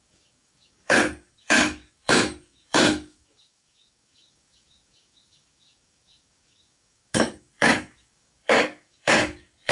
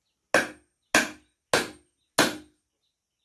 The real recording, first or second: second